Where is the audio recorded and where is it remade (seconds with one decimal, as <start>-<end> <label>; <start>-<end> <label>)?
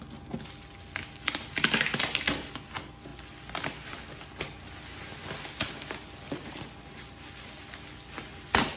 0.0-8.8 recorded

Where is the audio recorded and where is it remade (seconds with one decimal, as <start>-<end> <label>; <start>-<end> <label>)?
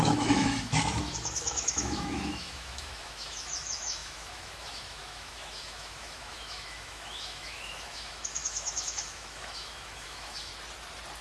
0.0-10.5 remade; 10.5-11.2 recorded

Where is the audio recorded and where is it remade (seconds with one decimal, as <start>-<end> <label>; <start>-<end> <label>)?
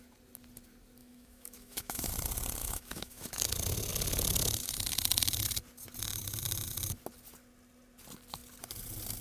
0.0-1.0 recorded; 1.0-2.1 remade; 2.1-2.6 recorded; 2.6-3.3 remade; 3.3-9.2 recorded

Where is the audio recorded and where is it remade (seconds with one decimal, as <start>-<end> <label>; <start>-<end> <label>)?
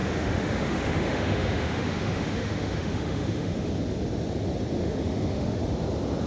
0.0-3.7 remade; 3.7-4.8 recorded; 4.8-5.6 remade; 5.6-6.3 recorded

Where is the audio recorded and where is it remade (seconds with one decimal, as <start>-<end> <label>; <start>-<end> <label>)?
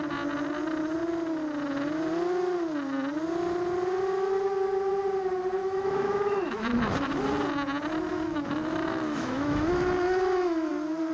0.0-5.6 recorded; 5.6-7.2 remade; 7.2-8.1 recorded; 8.1-10.7 remade; 10.7-11.1 recorded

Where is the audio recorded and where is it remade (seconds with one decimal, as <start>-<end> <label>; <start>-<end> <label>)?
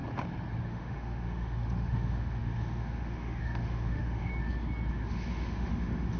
0.0-0.7 recorded; 0.7-4.3 remade; 4.3-4.9 recorded; 4.9-6.2 remade